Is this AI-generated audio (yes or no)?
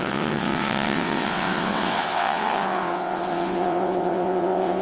yes